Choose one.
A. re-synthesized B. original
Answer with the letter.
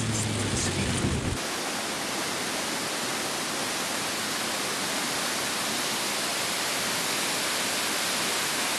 B